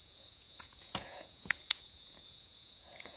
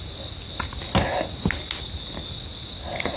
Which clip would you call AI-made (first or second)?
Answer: first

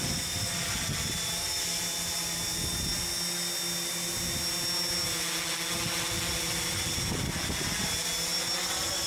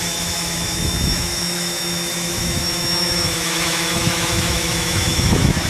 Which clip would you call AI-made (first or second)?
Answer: second